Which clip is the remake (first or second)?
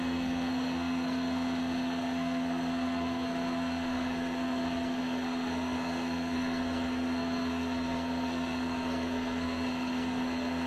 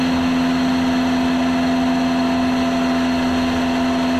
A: first